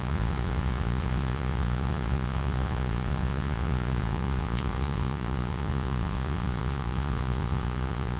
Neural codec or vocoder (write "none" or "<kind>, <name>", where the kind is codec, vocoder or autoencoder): vocoder, Vocos